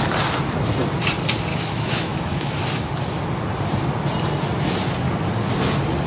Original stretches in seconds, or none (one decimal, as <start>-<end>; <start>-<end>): 0.0-1.5; 2.6-6.1